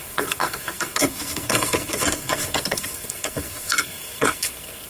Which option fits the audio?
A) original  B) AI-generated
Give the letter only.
B